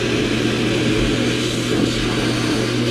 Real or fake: real